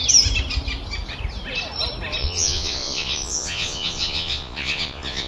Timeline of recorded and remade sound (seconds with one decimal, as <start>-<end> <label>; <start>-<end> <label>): 0.0-2.2 recorded; 2.2-5.3 remade

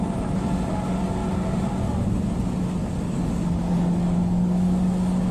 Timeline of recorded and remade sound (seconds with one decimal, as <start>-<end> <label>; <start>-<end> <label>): 0.0-2.8 recorded; 2.8-5.3 remade

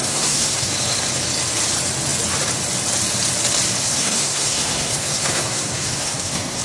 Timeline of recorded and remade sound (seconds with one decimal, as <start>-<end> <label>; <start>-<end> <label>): 0.0-0.7 remade; 0.7-3.8 recorded; 3.8-6.6 remade

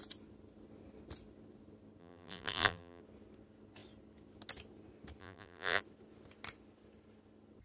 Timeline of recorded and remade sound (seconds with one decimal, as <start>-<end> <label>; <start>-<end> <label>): 0.0-2.0 recorded; 2.0-3.0 remade; 3.0-5.2 recorded; 5.2-5.8 remade; 5.8-7.6 recorded

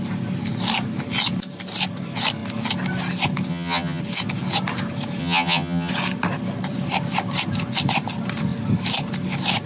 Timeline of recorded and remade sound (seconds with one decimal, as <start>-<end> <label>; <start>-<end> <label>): 0.0-3.5 recorded; 3.5-4.0 remade; 4.0-5.2 recorded; 5.2-5.9 remade; 5.9-9.7 recorded

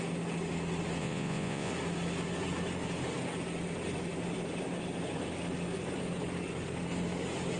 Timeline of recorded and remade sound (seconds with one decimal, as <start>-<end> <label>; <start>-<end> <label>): 0.0-1.0 recorded; 1.0-1.7 remade; 1.7-7.6 recorded